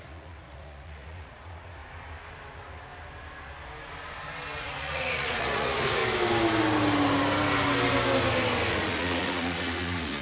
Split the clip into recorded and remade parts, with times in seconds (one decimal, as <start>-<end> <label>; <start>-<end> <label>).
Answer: 0.0-1.8 remade; 1.8-2.5 recorded; 2.5-2.9 remade; 2.9-4.6 recorded; 4.6-6.0 remade; 6.0-8.7 recorded; 8.7-10.2 remade